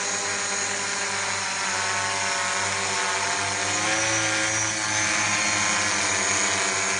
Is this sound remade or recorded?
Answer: recorded